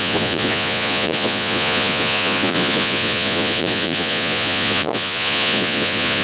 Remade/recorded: remade